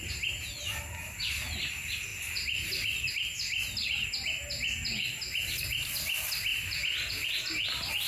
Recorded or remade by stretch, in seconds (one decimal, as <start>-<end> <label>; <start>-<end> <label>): 0.0-8.1 recorded